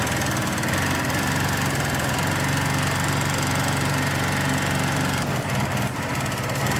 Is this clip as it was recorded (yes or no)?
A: yes